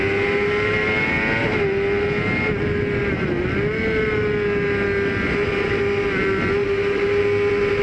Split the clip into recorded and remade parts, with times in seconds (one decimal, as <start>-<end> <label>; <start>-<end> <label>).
0.0-6.6 recorded; 6.6-7.2 remade; 7.2-7.8 recorded